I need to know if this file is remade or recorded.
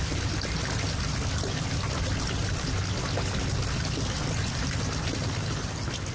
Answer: recorded